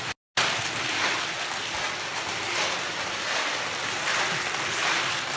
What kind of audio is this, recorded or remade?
recorded